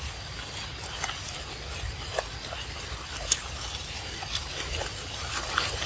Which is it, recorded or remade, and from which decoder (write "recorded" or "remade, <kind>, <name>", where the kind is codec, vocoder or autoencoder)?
recorded